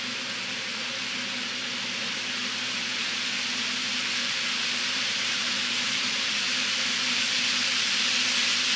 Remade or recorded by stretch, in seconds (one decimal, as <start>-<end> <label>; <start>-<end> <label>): 0.0-4.2 recorded; 4.2-7.9 remade; 7.9-8.8 recorded

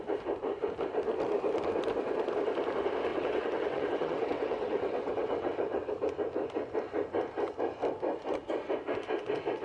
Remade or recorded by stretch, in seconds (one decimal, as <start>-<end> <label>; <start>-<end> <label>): 0.0-3.1 recorded; 3.1-5.9 remade; 5.9-9.6 recorded

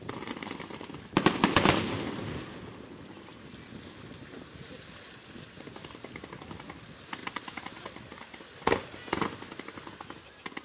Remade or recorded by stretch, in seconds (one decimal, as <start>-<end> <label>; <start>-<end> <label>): 0.0-7.2 recorded; 7.2-8.5 remade; 8.5-10.6 recorded

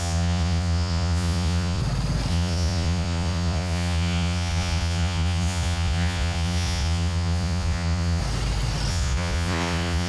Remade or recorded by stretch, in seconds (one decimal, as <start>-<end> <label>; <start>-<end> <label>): 0.0-1.8 remade; 1.8-2.3 recorded; 2.3-8.2 remade; 8.2-8.9 recorded; 8.9-10.1 remade

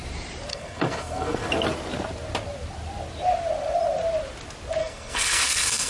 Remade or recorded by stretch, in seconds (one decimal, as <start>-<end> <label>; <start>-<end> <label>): 0.0-0.5 recorded; 0.5-1.5 remade; 1.5-4.8 recorded; 4.8-5.9 remade

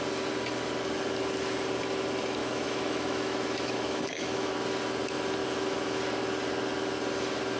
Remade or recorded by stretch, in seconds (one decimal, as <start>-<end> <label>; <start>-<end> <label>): 0.0-2.4 recorded; 2.4-4.5 remade; 4.5-5.4 recorded; 5.4-6.0 remade; 6.0-7.6 recorded

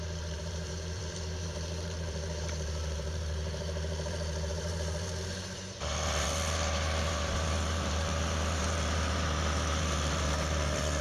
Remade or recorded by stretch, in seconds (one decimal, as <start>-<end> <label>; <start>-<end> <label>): 0.0-11.0 remade

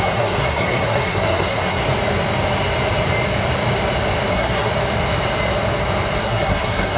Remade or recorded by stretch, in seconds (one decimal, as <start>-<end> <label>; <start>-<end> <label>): 0.0-1.8 remade; 1.8-4.3 recorded; 4.3-4.7 remade; 4.7-6.2 recorded; 6.2-7.0 remade